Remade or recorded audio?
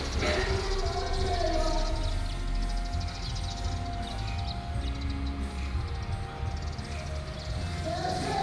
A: recorded